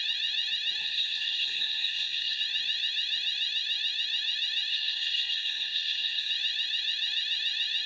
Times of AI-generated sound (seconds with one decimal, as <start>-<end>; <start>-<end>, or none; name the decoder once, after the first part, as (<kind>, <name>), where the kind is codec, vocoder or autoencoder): 0.8-2.4 (codec, SNAC); 4.7-6.3